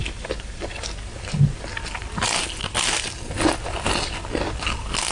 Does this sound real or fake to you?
real